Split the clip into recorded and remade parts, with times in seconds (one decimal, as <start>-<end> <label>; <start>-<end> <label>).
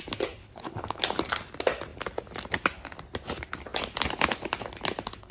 0.0-0.4 recorded; 0.4-1.0 remade; 1.0-5.3 recorded